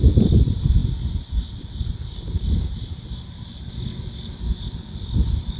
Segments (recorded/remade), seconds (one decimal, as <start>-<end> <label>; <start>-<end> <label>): 0.0-0.8 recorded; 0.8-3.7 remade; 3.7-5.6 recorded